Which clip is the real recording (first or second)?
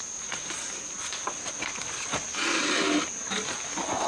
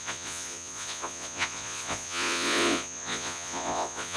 first